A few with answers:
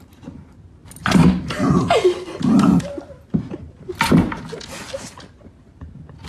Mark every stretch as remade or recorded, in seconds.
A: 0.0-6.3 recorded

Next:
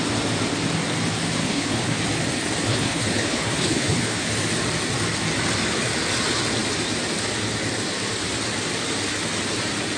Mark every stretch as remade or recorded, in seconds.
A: 0.0-1.4 recorded; 1.4-2.0 remade; 2.0-2.7 recorded; 2.7-4.3 remade; 4.3-10.0 recorded

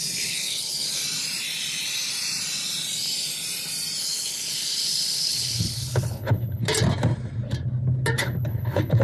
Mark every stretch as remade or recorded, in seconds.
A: 0.0-1.0 remade; 1.0-4.0 recorded; 4.0-6.6 remade; 6.6-8.2 recorded; 8.2-9.0 remade

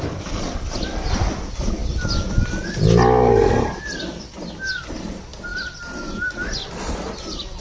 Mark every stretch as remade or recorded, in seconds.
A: 0.0-7.6 recorded